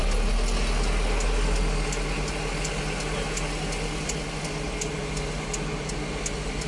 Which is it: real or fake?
real